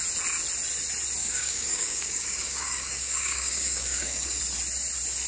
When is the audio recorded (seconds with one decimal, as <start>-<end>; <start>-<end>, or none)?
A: 0.0-1.2; 4.4-5.3